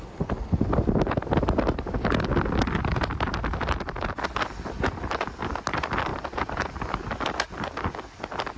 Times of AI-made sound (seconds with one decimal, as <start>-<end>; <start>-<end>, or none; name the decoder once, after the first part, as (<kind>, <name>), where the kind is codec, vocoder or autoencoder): 6.1-6.7 (vocoder, BigVGAN v2)

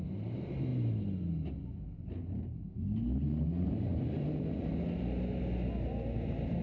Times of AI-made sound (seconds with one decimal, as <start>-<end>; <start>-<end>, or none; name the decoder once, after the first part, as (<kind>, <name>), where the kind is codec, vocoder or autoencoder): 3.9-4.8 (vocoder, BigVGAN v2)

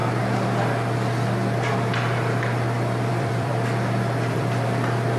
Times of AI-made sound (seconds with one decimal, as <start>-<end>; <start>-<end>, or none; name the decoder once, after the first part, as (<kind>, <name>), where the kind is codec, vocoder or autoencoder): 3.1-5.2 (vocoder, BigVGAN v2)